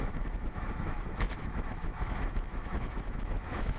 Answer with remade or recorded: remade